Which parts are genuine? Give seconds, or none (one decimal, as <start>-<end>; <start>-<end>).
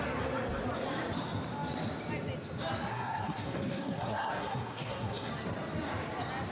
0.0-2.9; 5.3-6.5